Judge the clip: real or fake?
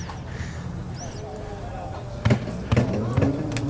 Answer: real